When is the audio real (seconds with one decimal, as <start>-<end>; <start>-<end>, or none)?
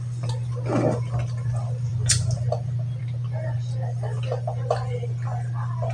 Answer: 0.0-5.9